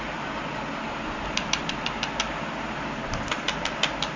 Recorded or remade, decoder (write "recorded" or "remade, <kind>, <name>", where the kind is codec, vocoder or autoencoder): recorded